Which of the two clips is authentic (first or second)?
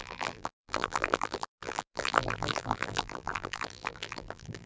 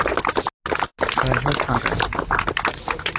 second